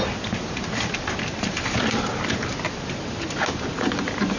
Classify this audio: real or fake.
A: real